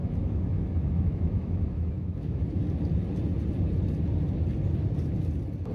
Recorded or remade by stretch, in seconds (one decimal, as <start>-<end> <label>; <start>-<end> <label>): 0.0-2.6 remade; 2.6-5.7 recorded